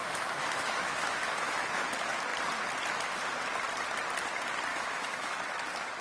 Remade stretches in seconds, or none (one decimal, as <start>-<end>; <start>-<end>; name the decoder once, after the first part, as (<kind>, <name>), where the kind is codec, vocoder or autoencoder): 0.0-1.9 (autoencoder, DAC-VAE); 4.7-5.5